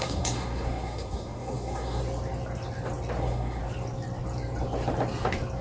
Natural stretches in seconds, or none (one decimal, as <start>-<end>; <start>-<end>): 2.0-3.2; 3.6-5.6